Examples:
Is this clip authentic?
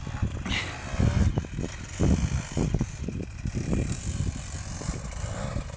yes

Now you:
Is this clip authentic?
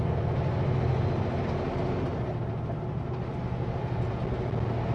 yes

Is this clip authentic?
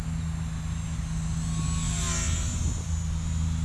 yes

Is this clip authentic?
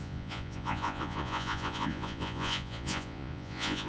no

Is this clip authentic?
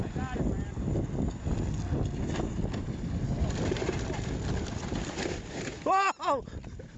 yes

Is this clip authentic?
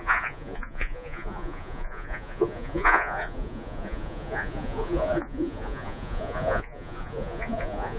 no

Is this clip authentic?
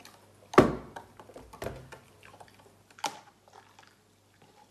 yes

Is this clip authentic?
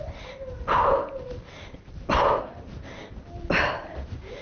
yes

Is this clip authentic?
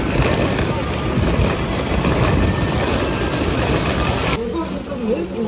yes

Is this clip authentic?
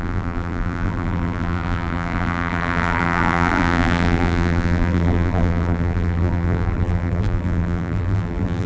no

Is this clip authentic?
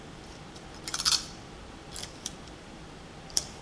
no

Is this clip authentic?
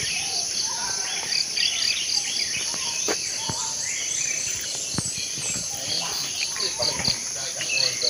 no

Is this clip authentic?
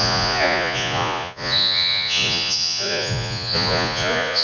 no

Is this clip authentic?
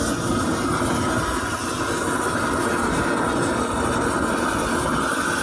yes